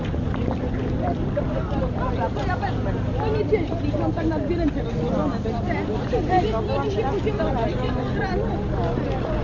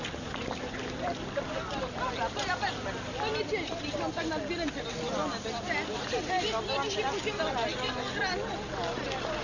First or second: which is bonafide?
second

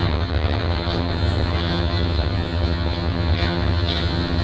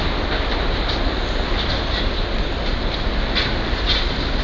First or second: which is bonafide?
second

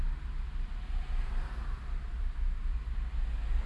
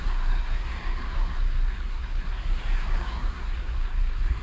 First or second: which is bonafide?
first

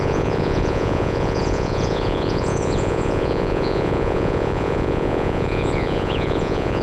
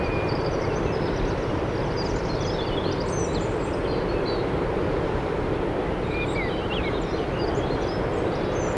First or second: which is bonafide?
second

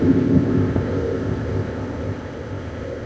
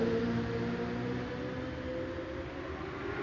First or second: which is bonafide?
second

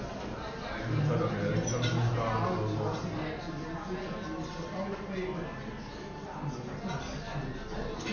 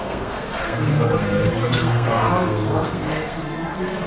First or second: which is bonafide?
first